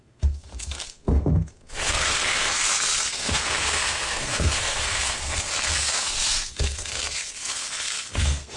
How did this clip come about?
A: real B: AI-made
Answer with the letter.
B